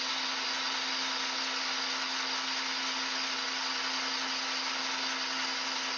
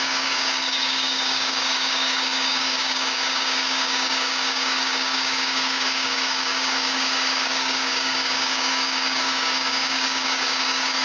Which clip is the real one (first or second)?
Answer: first